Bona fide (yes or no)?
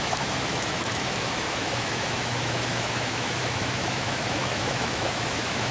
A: no